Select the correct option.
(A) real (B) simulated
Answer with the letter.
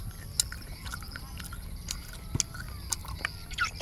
A